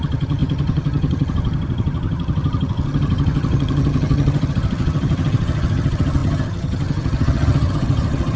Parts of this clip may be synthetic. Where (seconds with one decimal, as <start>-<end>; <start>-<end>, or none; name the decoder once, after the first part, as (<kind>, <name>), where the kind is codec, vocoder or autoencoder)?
0.0-8.4 (vocoder, HiFi-GAN)